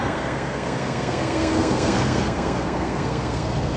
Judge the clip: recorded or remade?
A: remade